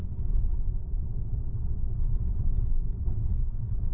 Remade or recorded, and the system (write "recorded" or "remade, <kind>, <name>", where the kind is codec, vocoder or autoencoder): remade, vocoder, WaveNeXt